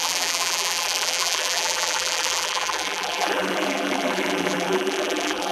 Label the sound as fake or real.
fake